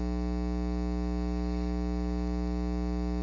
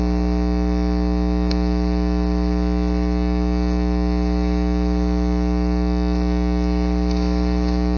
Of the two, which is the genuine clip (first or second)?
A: first